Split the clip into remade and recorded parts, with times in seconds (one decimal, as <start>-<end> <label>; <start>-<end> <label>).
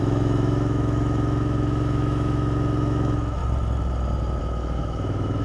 0.0-3.4 remade; 3.4-4.4 recorded; 4.4-5.4 remade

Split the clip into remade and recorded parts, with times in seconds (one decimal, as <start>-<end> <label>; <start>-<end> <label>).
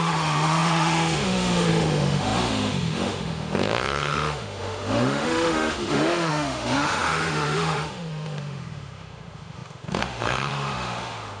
0.0-11.4 remade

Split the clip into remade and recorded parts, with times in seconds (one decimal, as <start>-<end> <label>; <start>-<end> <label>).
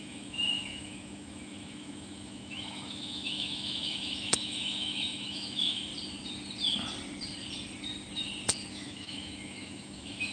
0.0-5.9 remade; 5.9-8.7 recorded; 8.7-10.3 remade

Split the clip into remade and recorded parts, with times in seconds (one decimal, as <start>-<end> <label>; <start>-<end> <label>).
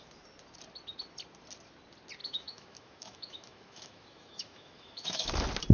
0.0-2.2 recorded; 2.2-5.3 remade; 5.3-5.7 recorded